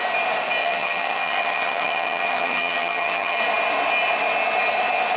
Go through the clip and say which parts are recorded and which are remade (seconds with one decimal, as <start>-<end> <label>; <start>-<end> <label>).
0.0-0.6 recorded; 0.6-3.4 remade; 3.4-5.2 recorded